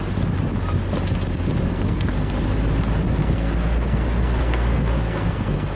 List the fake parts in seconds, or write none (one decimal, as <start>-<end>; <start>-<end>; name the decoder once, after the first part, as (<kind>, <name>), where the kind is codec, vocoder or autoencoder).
1.7-2.3 (codec, SNAC); 3.2-5.8